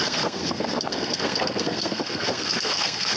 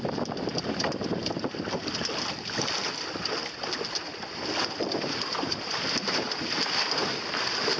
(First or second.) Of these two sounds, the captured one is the second